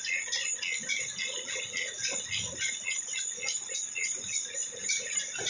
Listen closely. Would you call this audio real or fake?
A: real